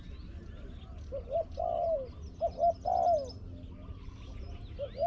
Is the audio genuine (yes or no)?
yes